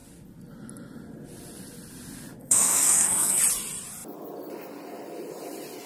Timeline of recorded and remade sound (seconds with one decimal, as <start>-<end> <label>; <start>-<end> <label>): 0.0-2.4 recorded; 2.4-3.4 remade; 3.4-5.9 recorded